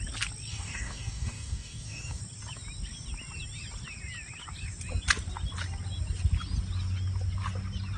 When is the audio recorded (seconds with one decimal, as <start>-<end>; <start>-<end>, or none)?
0.0-0.5; 2.2-8.0